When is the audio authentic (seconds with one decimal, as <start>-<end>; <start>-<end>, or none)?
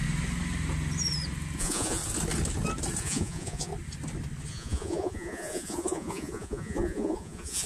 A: 0.0-1.6; 2.0-3.0; 3.7-4.5